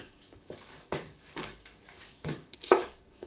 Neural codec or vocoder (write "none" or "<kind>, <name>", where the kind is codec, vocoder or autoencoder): codec, DAC